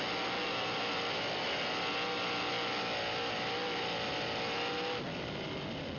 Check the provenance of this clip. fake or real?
real